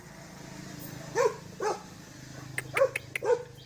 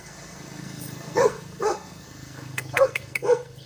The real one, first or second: first